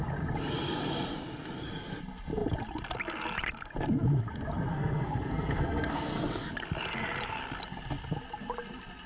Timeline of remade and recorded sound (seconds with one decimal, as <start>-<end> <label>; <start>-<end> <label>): 0.0-4.7 recorded; 4.7-6.5 remade; 6.5-9.1 recorded